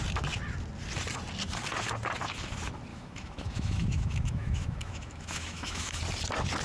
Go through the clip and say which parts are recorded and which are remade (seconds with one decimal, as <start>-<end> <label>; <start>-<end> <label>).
0.0-2.9 recorded; 2.9-6.0 remade; 6.0-6.6 recorded